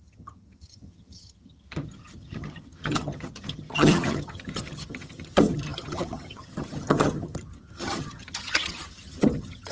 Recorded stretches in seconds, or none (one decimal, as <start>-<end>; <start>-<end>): none